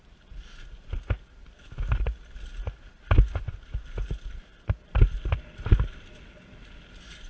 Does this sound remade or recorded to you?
recorded